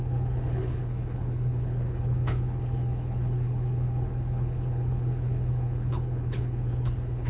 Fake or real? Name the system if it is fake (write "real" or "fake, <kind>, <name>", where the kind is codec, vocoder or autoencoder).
fake, codec, HILCodec